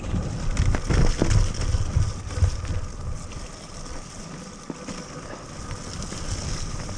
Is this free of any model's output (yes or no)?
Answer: yes